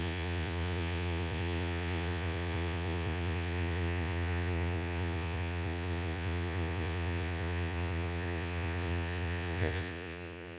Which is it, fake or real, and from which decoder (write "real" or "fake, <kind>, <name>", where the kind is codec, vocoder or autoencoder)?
fake, vocoder, Vocos